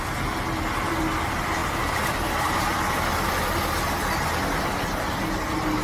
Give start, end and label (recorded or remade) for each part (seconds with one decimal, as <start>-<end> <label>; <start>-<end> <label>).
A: 0.0-5.8 recorded